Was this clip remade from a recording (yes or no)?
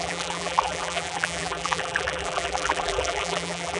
yes